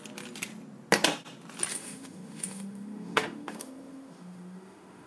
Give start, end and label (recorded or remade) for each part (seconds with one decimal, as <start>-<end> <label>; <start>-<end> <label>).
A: 0.0-1.7 recorded; 1.7-5.1 remade